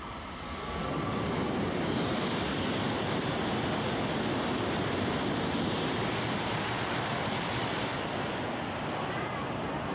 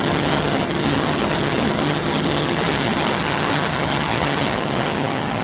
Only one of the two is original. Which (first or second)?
first